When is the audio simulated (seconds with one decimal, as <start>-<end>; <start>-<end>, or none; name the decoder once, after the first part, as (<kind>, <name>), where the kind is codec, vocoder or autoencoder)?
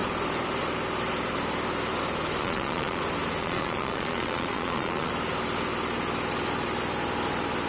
2.4-3.0 (vocoder, Vocos); 3.4-5.1